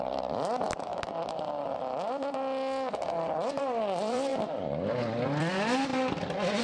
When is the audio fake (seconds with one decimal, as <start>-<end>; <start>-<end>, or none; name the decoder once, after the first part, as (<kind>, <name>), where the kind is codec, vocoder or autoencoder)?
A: 0.0-0.9 (vocoder, BigVGAN v2); 3.6-4.3; 4.9-5.9